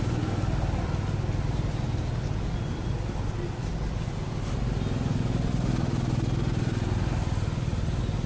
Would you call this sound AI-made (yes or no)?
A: no